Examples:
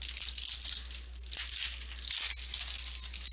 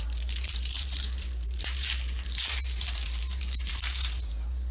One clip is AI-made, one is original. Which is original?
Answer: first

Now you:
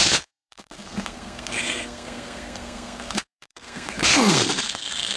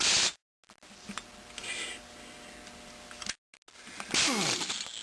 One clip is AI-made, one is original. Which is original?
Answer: second